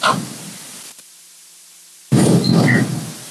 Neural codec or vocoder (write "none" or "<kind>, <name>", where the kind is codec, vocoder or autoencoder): none